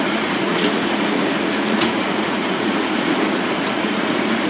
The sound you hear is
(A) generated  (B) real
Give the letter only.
A